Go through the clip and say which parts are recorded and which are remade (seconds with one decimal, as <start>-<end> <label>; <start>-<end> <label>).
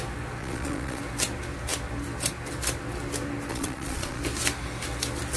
0.0-0.4 recorded; 0.4-1.0 remade; 1.0-3.5 recorded; 3.5-4.2 remade; 4.2-5.4 recorded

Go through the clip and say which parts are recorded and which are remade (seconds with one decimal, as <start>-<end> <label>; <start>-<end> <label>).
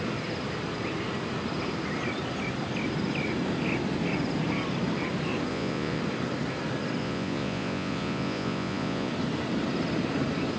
0.0-5.5 recorded; 5.5-6.0 remade; 6.0-7.0 recorded; 7.0-9.1 remade; 9.1-10.6 recorded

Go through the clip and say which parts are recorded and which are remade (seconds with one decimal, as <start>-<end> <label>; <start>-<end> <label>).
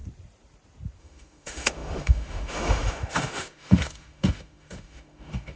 0.0-1.0 recorded; 1.0-5.6 remade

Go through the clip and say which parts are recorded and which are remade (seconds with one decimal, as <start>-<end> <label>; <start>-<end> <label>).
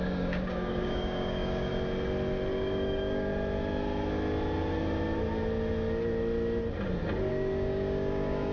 0.0-1.7 remade; 1.7-2.5 recorded; 2.5-3.3 remade; 3.3-7.3 recorded; 7.3-8.5 remade